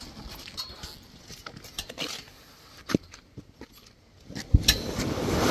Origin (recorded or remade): recorded